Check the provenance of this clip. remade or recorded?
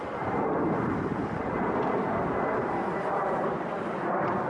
recorded